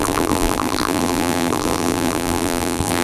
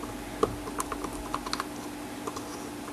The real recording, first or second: second